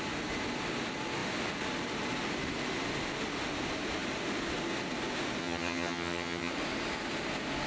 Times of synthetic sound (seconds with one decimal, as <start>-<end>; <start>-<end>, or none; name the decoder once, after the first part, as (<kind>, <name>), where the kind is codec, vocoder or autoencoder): 5.4-6.5 (vocoder, HiFi-GAN)